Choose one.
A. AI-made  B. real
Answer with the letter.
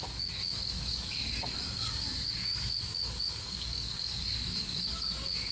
A